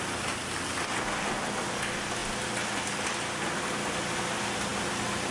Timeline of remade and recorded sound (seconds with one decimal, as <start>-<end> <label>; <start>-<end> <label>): 0.0-5.3 recorded